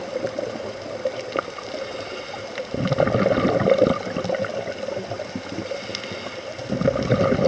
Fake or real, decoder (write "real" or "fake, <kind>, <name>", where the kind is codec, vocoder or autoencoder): real